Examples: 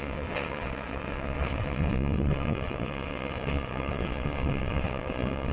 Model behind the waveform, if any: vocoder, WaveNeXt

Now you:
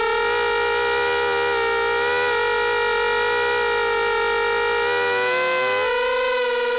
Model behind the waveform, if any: none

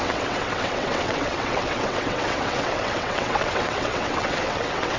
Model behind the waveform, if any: vocoder, WaveNeXt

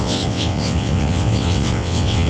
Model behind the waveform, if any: vocoder, WaveNeXt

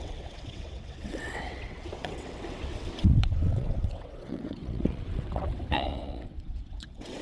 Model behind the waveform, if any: vocoder, WaveNeXt